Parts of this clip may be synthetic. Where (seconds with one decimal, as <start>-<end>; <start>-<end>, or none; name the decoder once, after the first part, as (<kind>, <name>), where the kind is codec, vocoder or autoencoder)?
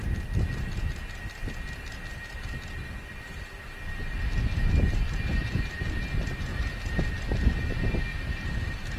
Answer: 5.3-5.9 (vocoder, BigVGAN v2); 6.5-7.1; 8.1-9.0